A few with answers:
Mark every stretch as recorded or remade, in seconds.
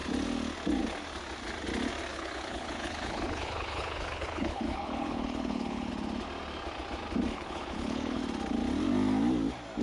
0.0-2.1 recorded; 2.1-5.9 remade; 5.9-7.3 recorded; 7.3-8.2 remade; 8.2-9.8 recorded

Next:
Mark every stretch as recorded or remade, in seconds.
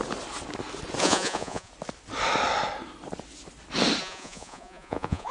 0.0-1.0 recorded; 1.0-1.7 remade; 1.7-4.0 recorded; 4.0-5.3 remade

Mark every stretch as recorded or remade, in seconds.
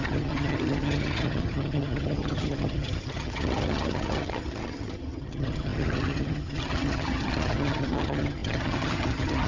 0.0-9.5 remade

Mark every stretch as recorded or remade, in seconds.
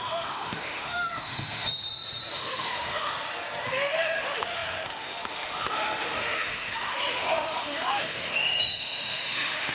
0.0-1.7 remade; 1.7-2.3 recorded; 2.3-3.1 remade; 3.1-3.7 recorded; 3.7-9.7 remade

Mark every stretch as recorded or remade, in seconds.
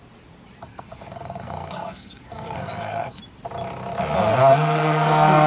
0.0-0.7 recorded; 0.7-3.2 remade; 3.2-4.5 recorded; 4.5-5.5 remade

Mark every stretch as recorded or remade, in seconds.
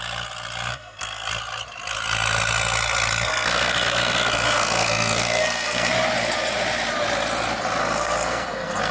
0.0-0.7 recorded; 0.7-1.3 remade; 1.3-3.3 recorded; 3.3-5.9 remade; 5.9-7.8 recorded; 7.8-8.9 remade